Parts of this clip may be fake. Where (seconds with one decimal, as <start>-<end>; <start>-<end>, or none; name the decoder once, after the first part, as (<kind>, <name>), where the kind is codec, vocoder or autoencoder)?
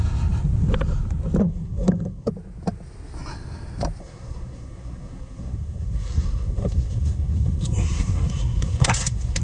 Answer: 1.4-2.3 (codec, SNAC); 4.0-9.4